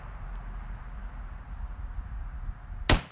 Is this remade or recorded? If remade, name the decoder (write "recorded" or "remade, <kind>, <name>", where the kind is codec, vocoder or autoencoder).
recorded